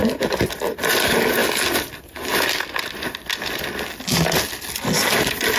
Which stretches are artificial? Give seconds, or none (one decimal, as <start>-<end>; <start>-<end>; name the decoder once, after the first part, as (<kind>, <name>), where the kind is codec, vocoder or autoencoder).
0.0-0.8 (vocoder, BigVGAN v2); 2.3-3.9